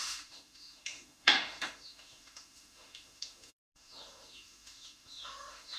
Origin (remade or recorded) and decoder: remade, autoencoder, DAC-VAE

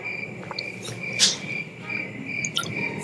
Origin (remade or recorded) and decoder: recorded